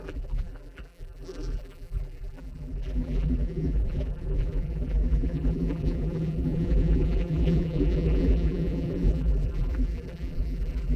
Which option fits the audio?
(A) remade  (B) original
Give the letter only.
A